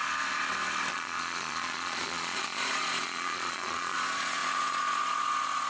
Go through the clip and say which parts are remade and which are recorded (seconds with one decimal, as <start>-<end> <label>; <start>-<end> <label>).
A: 0.0-0.9 recorded; 0.9-5.7 remade